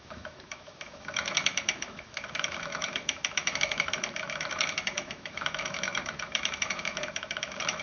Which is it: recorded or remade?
remade